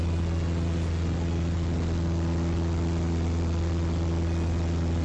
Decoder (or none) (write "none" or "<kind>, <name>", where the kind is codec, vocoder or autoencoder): none